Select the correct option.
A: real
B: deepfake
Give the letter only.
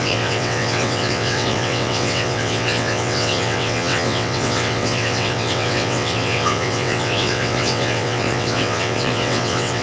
B